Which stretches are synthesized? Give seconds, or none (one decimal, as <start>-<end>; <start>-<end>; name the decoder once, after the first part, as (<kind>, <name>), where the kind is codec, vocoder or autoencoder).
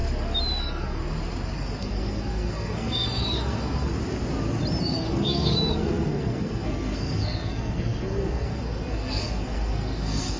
0.6-1.0 (codec, SNAC); 1.8-3.9; 4.8-10.4